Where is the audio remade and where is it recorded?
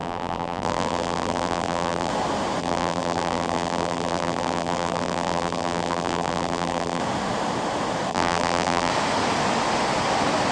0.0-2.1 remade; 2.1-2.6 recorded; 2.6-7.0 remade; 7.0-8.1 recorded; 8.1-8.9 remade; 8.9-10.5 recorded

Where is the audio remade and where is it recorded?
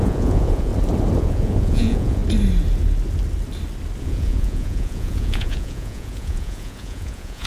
0.0-0.7 remade; 0.7-1.2 recorded; 1.2-2.2 remade; 2.2-4.0 recorded; 4.0-7.5 remade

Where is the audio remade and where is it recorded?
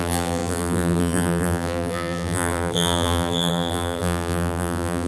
0.0-5.1 remade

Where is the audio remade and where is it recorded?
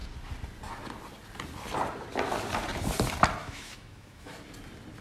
0.0-3.4 recorded; 3.4-4.3 remade; 4.3-5.0 recorded